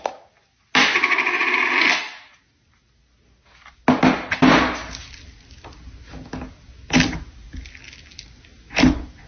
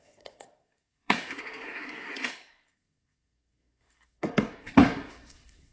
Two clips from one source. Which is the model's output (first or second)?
second